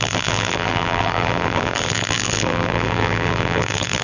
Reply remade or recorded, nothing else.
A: remade